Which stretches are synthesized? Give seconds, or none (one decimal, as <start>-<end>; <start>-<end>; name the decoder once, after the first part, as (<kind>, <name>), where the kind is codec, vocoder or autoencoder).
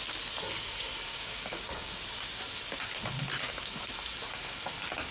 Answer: 1.1-2.0 (codec, DAC)